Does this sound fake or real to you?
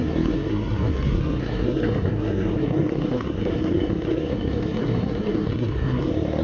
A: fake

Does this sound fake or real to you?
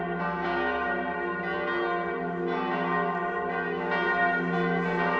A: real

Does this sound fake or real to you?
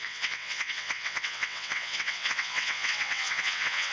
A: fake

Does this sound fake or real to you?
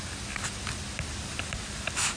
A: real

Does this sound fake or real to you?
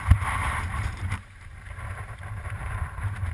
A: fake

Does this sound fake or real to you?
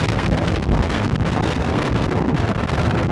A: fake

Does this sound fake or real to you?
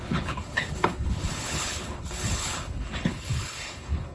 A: fake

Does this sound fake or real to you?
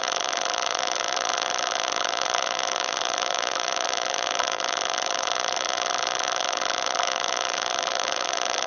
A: fake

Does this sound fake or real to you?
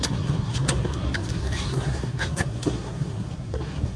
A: fake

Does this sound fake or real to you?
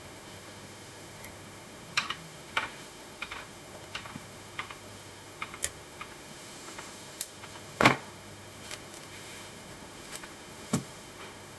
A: fake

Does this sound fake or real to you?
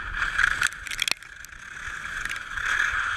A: real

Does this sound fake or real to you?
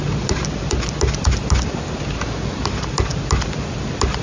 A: real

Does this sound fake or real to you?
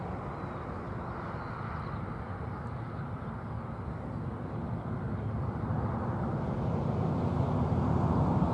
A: real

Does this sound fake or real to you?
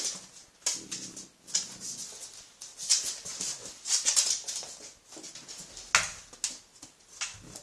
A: real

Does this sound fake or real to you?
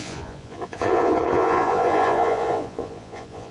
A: fake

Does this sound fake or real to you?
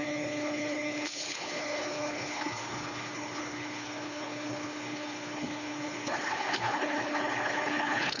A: fake